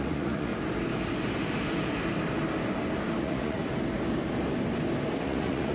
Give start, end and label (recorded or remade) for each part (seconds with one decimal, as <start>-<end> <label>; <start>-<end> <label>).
0.0-0.5 remade; 0.5-3.2 recorded; 3.2-3.6 remade; 3.6-5.2 recorded; 5.2-5.7 remade